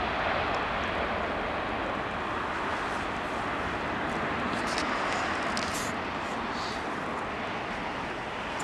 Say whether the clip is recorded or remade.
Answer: recorded